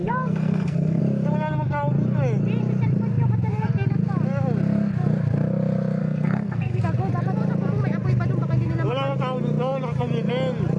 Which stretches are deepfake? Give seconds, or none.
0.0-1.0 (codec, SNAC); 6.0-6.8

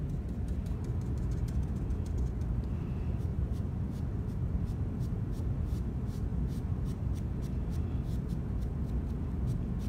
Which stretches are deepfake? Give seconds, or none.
3.3-4.1 (vocoder, BigVGAN v2); 6.3-7.4

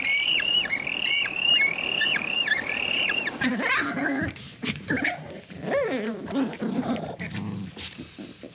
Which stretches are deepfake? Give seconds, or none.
0.0-0.6 (vocoder, BigVGAN v2); 1.1-8.5

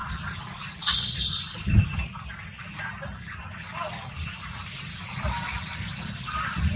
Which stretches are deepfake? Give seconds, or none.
0.0-1.5 (vocoder, BigVGAN v2)

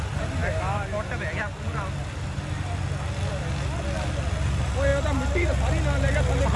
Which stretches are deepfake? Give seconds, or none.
0.4-1.1 (autoencoder, DAC-VAE)

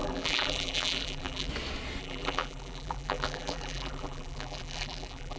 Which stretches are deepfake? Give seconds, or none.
0.0-1.5 (vocoder, BigVGAN v2); 2.0-5.4

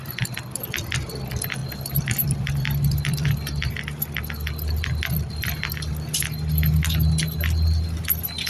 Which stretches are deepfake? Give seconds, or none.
0.0-0.6 (vocoder, BigVGAN v2); 1.6-3.7

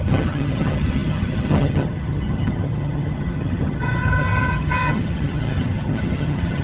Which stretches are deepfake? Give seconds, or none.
0.0-6.6 (vocoder, HiFi-GAN)